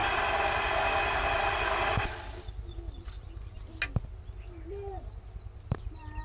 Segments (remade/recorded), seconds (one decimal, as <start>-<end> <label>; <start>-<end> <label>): 0.0-6.2 recorded